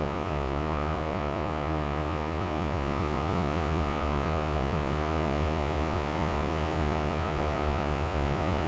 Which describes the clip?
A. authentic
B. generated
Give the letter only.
B